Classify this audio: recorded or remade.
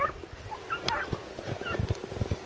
recorded